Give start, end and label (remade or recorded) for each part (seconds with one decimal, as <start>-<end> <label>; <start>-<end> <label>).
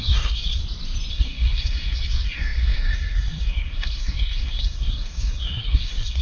0.0-0.6 remade; 0.6-1.1 recorded; 1.1-6.2 remade